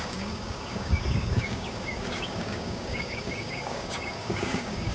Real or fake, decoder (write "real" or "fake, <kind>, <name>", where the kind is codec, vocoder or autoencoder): fake, codec, DAC